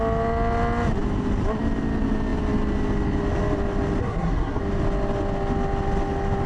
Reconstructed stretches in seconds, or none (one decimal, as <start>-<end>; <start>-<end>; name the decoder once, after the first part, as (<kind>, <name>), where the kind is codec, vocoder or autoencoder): 4.0-4.6 (codec, SNAC)